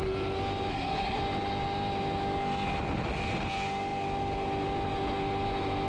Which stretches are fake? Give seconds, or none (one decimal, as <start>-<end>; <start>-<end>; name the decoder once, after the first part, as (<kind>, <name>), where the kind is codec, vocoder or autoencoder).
0.7-1.2 (codec, SNAC)